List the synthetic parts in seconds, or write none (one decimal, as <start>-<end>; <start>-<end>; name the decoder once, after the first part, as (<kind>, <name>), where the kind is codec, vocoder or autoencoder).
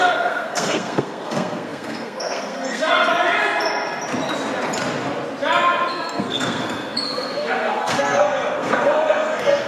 0.0-3.1 (codec, SNAC); 5.9-9.7